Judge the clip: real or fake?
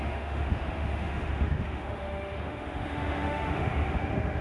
fake